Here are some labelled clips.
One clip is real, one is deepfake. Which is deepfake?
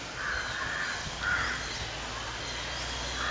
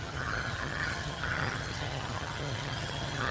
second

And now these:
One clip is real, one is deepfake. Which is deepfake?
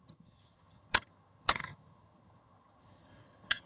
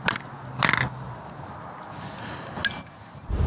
first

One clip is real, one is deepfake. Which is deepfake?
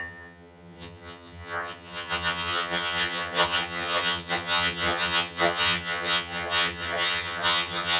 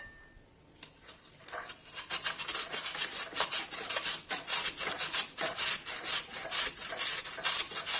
first